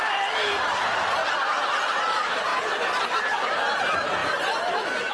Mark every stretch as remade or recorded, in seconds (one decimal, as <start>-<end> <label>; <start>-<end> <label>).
0.0-1.2 remade; 1.2-1.8 recorded; 1.8-2.5 remade; 2.5-3.1 recorded; 3.1-4.2 remade; 4.2-5.1 recorded